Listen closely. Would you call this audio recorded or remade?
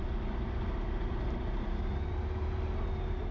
recorded